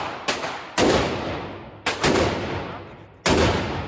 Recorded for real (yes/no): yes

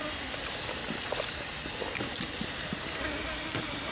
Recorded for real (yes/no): yes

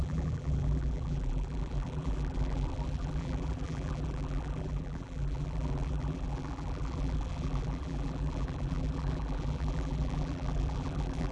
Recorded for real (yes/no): no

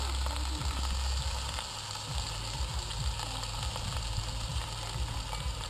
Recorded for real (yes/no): yes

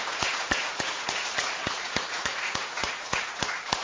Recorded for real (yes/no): no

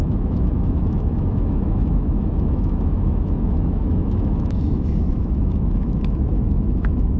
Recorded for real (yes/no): no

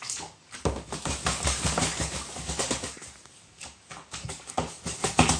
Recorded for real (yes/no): no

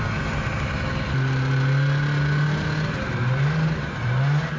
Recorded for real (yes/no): yes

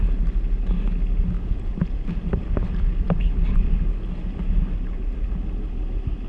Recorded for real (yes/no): yes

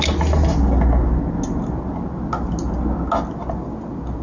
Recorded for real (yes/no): yes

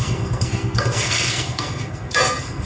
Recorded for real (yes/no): no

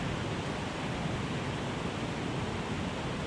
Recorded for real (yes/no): no